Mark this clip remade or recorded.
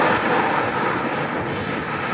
recorded